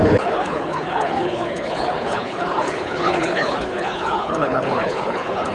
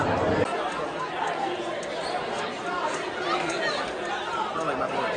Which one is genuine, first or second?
second